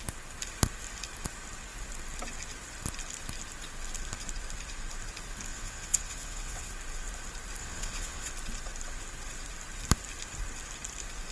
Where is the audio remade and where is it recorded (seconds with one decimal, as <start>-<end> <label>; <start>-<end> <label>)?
0.0-5.5 recorded; 5.5-6.7 remade; 6.7-7.6 recorded; 7.6-8.3 remade; 8.3-11.3 recorded